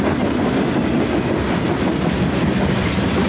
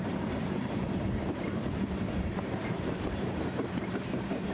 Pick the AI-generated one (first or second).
second